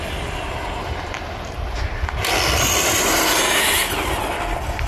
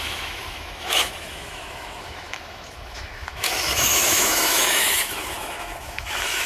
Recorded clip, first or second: first